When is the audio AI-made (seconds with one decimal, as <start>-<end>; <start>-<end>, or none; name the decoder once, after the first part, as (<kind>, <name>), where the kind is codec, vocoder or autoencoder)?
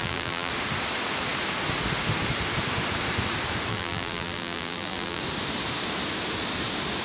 0.0-0.5 (vocoder, BigVGAN v2); 3.7-5.2